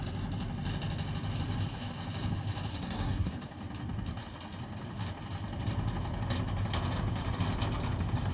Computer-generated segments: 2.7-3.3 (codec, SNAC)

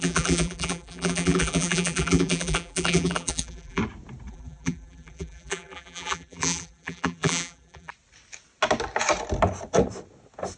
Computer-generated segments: 0.0-3.8 (vocoder, BigVGAN v2); 4.3-7.9

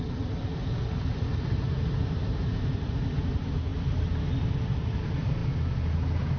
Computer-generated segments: none

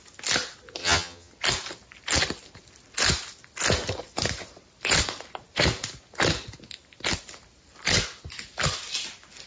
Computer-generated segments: 0.8-1.3 (vocoder, HiFi-GAN)

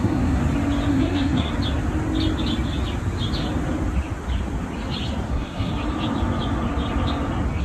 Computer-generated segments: 0.0-0.4 (codec, SNAC); 0.9-1.5; 5.3-5.7

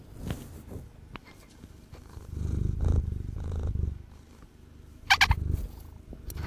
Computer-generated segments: 1.2-5.1 (vocoder, BigVGAN v2)